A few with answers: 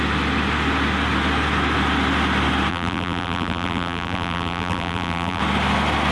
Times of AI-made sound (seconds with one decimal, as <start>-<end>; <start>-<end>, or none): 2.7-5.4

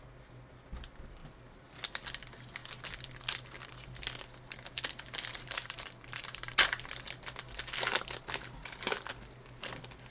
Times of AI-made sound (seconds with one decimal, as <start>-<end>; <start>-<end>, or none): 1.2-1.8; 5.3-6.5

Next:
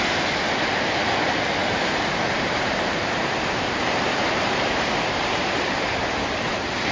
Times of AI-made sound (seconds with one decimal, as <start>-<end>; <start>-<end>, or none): 1.6-5.7

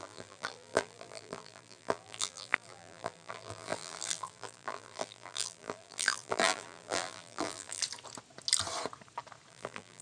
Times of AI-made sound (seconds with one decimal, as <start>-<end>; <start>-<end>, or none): 0.0-7.8; 9.5-10.0

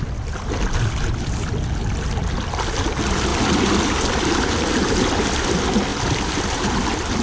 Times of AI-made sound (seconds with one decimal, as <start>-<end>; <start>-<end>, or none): 3.3-5.5; 5.9-6.7

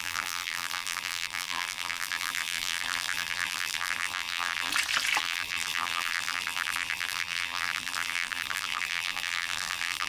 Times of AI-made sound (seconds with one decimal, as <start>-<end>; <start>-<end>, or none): 0.0-4.7; 5.2-10.1

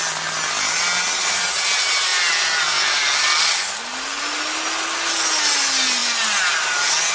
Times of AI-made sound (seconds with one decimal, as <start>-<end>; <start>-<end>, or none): none

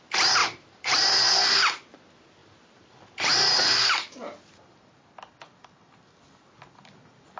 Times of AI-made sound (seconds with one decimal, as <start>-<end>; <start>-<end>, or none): 0.4-1.1